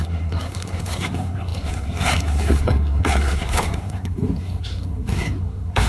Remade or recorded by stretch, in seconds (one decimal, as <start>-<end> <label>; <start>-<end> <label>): 0.0-5.9 remade